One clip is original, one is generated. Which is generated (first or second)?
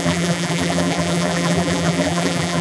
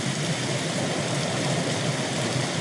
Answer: first